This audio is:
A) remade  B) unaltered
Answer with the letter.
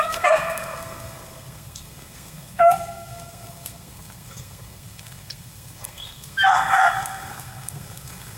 A